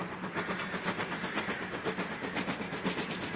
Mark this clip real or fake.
real